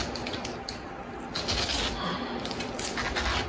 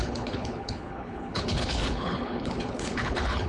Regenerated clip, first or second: second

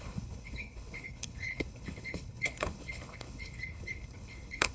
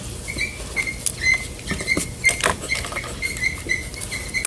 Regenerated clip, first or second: first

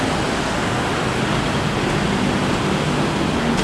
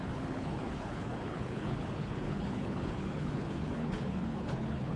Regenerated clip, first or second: second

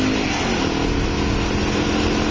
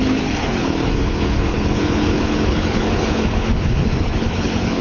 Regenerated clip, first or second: second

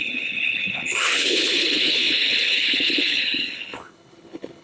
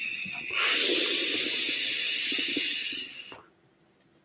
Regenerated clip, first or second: first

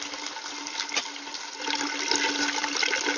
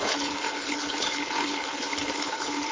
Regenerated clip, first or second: second